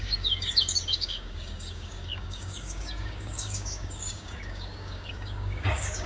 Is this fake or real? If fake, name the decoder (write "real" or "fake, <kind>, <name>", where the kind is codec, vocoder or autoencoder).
fake, codec, DAC